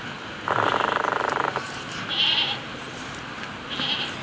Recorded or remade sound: recorded